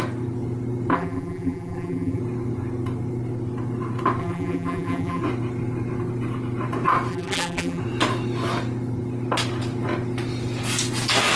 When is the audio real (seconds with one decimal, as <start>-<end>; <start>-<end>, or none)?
0.0-0.9; 2.2-4.2; 5.2-7.1; 7.8-11.4